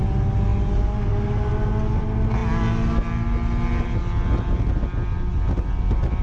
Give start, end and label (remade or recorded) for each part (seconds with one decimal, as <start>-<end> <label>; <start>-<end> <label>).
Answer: 0.0-6.2 recorded